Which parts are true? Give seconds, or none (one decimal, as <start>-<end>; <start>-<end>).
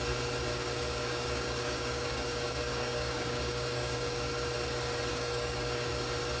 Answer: 0.0-0.5; 4.3-5.1; 5.9-6.4